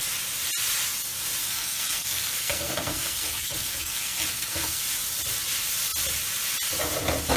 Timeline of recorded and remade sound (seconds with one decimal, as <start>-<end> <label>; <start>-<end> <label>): 0.0-1.4 recorded; 1.4-4.8 remade; 4.8-7.4 recorded